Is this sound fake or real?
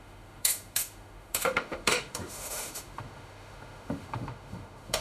fake